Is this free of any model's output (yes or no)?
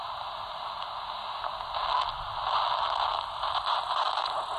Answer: yes